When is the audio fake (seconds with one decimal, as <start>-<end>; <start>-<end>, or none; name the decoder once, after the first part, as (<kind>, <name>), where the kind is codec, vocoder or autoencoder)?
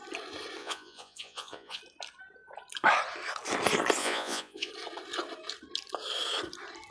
0.6-1.8 (vocoder, Vocos); 4.0-4.7